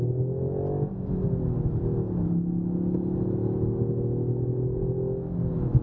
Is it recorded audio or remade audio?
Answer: recorded